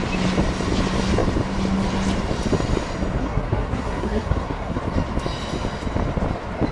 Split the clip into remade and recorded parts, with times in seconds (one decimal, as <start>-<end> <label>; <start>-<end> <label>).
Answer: 0.0-3.2 recorded; 3.2-4.8 remade; 4.8-6.7 recorded